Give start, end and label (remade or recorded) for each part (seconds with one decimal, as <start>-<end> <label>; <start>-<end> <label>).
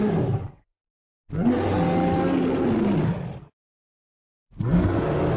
0.0-5.4 recorded